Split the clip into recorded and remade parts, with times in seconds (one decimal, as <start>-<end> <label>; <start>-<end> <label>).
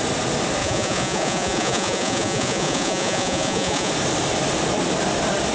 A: 0.0-0.6 recorded; 0.6-3.9 remade; 3.9-5.5 recorded